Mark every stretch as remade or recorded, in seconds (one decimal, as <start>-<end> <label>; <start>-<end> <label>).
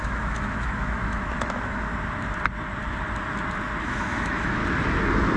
0.0-1.9 remade; 1.9-3.8 recorded; 3.8-4.6 remade; 4.6-5.4 recorded